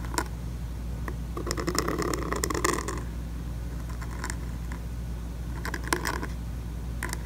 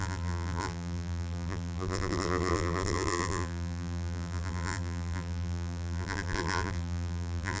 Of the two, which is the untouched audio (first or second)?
first